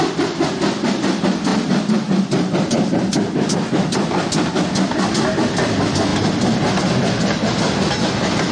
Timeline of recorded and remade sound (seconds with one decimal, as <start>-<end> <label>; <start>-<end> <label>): 0.0-8.5 recorded